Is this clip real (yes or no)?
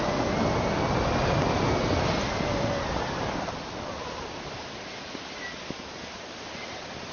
yes